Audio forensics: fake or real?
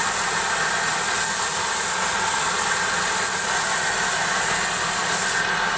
real